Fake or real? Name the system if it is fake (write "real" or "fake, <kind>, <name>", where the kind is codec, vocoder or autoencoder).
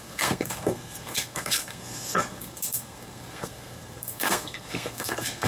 fake, codec, SNAC